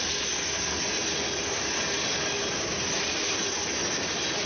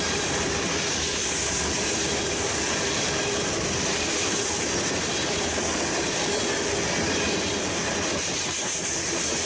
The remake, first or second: second